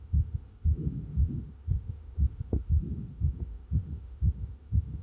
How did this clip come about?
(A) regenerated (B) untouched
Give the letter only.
A